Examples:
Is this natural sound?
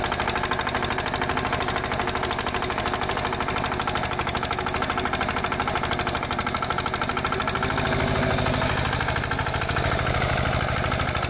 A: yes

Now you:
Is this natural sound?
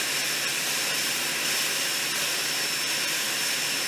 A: yes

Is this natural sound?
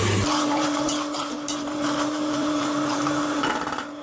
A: no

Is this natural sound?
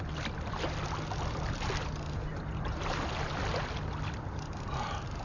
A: yes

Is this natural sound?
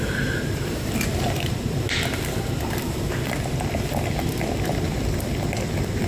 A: no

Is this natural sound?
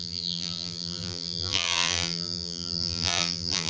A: no